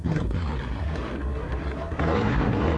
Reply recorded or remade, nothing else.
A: remade